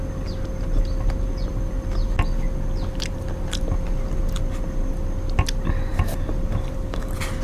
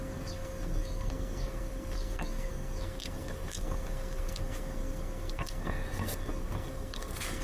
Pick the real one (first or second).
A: first